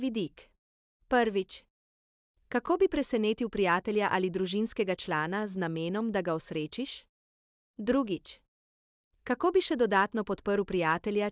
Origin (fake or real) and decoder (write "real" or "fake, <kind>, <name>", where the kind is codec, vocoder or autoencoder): real